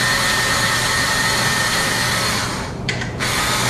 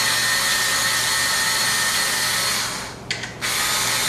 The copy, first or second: first